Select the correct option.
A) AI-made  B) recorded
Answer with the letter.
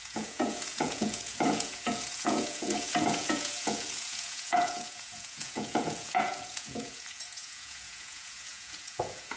A